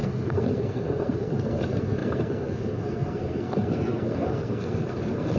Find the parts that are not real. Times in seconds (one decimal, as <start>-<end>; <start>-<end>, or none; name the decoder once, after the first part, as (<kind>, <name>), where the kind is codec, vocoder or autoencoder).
0.0-5.4 (codec, SNAC)